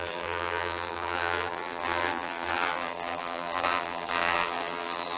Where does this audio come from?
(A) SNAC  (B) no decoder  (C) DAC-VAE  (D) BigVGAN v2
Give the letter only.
D